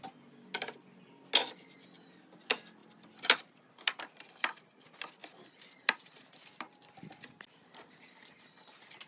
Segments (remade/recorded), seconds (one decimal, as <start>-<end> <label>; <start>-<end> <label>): 0.0-9.1 recorded